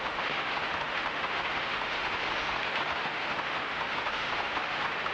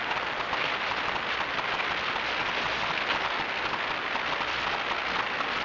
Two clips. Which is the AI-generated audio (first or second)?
first